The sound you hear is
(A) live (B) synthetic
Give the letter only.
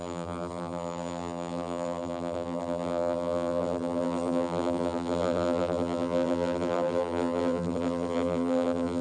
B